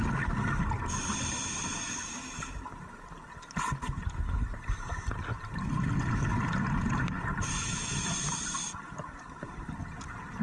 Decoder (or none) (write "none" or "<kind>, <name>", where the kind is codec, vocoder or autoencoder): none